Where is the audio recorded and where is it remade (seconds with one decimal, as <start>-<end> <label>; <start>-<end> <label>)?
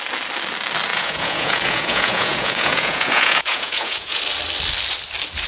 0.0-0.9 recorded; 0.9-4.2 remade; 4.2-5.5 recorded